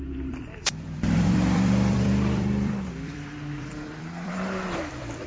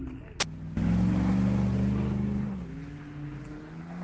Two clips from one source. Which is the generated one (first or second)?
first